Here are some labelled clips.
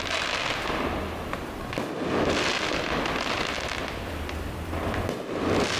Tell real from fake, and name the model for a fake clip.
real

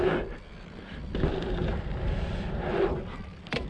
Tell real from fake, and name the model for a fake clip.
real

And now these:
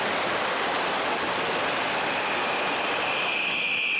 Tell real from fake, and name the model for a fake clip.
real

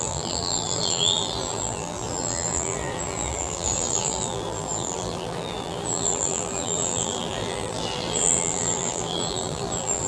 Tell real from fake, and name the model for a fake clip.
fake, vocoder, BigVGAN v2